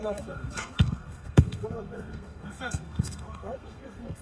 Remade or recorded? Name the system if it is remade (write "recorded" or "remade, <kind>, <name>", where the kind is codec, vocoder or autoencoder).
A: remade, codec, SNAC